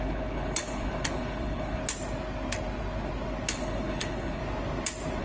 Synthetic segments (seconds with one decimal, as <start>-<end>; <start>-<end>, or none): 0.0-1.8; 3.5-4.4